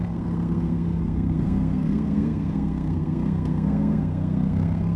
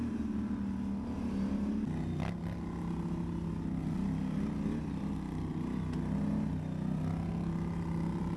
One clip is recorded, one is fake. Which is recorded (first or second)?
second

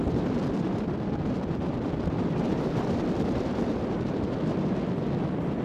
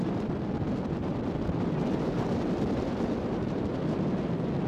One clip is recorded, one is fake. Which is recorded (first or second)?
second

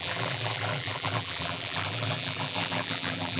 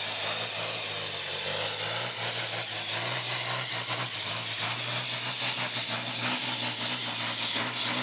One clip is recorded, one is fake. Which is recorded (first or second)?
second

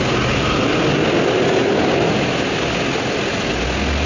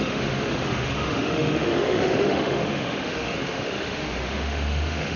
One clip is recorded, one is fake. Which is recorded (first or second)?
first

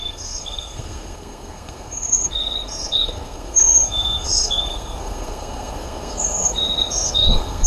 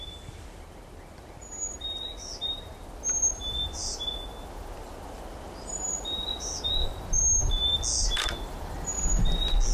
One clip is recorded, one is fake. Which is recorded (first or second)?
second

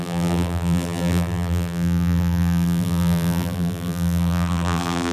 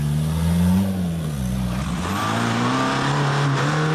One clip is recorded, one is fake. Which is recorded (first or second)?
second